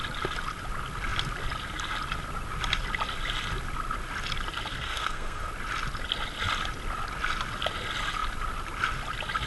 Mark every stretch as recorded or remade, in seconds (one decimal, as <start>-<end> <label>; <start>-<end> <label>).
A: 0.0-4.7 recorded; 4.7-5.5 remade; 5.5-9.5 recorded